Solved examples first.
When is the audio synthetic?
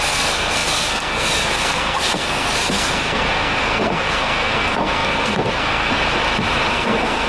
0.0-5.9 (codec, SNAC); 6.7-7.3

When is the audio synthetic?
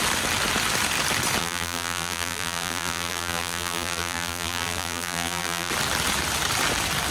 1.4-5.7 (vocoder, BigVGAN v2)